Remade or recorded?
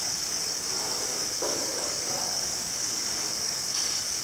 remade